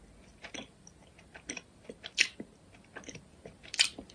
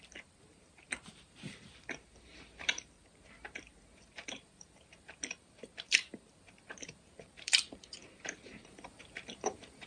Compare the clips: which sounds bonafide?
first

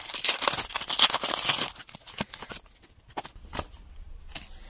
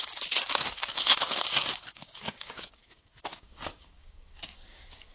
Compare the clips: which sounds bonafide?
first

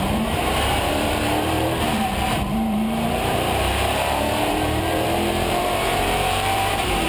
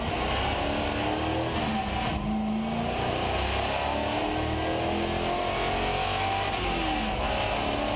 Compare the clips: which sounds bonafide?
second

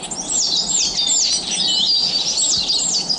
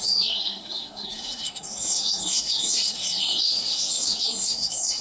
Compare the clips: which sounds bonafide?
first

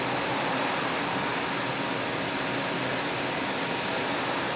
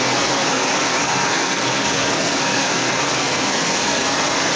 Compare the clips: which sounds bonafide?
first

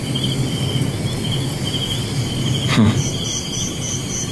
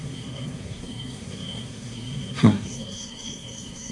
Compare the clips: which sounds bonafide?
first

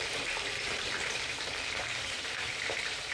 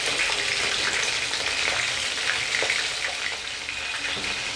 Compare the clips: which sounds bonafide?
second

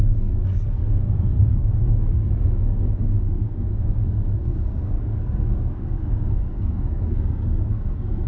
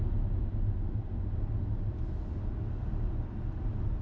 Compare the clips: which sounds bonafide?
second